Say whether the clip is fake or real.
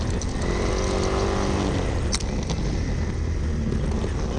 real